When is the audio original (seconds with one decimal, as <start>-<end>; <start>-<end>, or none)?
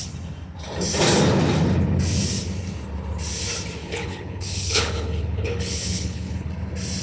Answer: 0.0-3.8; 6.5-7.0